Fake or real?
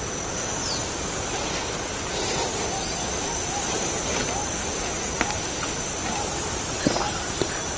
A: real